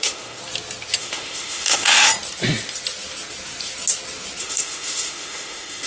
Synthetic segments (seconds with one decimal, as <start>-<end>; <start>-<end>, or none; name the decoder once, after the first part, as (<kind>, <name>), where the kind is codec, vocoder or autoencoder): 0.0-0.4 (autoencoder, DAC-VAE); 1.0-2.1; 4.4-5.9

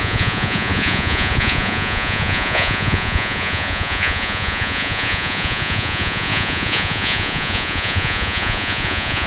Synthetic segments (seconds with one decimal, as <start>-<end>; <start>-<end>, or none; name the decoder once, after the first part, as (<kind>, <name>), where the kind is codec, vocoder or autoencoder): 0.0-9.3 (vocoder, Vocos)

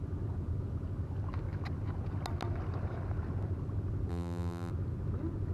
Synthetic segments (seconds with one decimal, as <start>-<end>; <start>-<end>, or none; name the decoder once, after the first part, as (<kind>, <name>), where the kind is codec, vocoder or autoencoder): 4.1-4.7 (vocoder, BigVGAN v2)

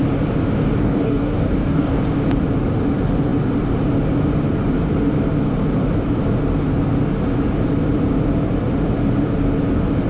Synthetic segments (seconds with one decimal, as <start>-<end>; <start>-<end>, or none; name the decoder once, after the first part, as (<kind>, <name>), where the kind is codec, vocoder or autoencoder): 0.8-2.0 (codec, DAC)

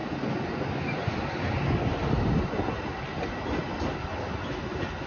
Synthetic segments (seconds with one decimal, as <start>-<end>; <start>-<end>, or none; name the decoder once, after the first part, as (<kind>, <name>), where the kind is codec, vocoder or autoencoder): none

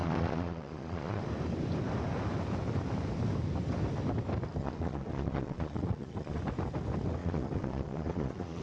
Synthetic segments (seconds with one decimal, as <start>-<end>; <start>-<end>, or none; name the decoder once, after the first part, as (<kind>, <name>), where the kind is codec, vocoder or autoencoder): 0.0-1.2 (vocoder, Vocos); 4.6-6.4; 7.2-8.6

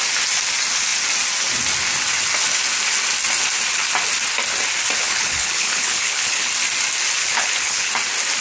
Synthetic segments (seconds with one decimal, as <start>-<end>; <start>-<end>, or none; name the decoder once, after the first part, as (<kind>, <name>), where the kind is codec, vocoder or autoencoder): 5.0-6.5 (codec, HILCodec); 7.2-7.9

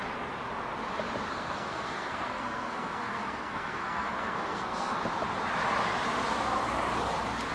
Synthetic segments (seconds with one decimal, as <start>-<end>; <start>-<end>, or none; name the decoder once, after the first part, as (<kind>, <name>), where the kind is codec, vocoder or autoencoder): 1.3-5.0 (codec, SNAC)